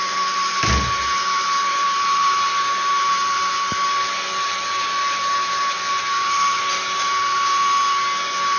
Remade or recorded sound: recorded